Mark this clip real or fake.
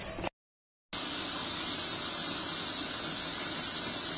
real